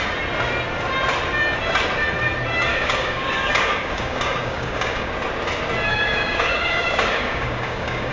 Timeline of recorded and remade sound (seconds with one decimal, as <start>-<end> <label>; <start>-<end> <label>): 0.0-2.7 recorded; 2.7-5.1 remade; 5.1-5.9 recorded; 5.9-8.1 remade